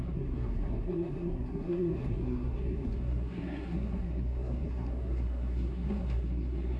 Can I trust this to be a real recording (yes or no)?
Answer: no